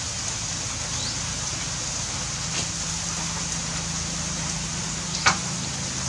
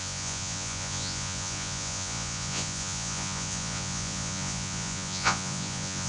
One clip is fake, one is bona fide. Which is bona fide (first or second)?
first